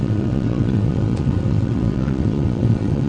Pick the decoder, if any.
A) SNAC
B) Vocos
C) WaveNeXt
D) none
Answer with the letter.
C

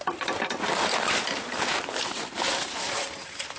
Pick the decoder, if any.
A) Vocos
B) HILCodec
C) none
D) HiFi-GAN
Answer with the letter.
C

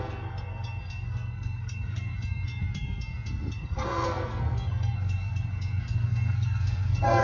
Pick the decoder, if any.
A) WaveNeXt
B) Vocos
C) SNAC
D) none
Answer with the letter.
C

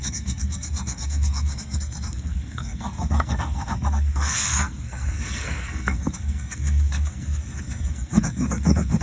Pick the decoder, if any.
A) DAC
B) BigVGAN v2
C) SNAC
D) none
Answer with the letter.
C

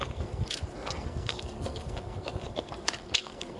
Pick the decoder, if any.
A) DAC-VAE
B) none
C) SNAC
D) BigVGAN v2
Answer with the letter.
C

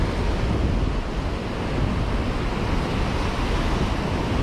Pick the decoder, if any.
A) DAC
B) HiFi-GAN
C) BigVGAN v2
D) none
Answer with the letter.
D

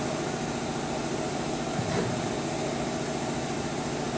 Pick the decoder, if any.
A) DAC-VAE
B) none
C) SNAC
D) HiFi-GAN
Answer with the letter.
B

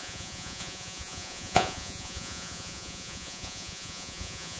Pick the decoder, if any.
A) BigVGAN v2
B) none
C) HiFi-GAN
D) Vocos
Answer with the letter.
D